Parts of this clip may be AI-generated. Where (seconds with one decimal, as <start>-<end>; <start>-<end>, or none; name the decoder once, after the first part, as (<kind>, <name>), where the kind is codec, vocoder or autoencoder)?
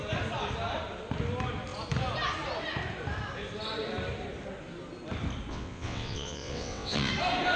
5.5-7.1 (vocoder, WaveNeXt)